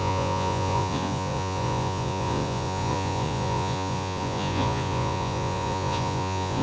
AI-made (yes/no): yes